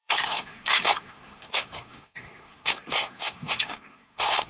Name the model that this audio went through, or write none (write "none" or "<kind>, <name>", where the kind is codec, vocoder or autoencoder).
codec, SNAC